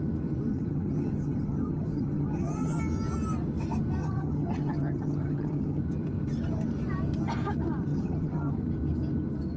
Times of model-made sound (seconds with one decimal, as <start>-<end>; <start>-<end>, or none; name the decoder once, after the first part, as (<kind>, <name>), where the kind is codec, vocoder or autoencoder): 0.5-2.8 (vocoder, HiFi-GAN); 4.0-5.8; 7.9-8.5